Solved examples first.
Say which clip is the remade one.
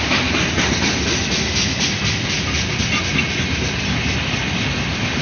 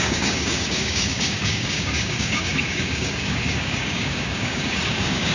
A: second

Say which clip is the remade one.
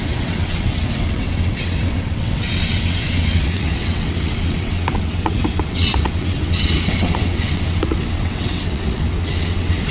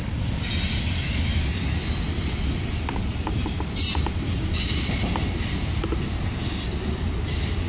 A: first